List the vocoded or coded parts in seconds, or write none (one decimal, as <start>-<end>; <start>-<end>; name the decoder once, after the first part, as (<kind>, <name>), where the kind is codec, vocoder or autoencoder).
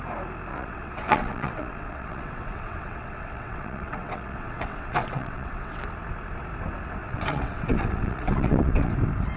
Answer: 0.5-5.8 (vocoder, WaveNeXt); 7.0-8.9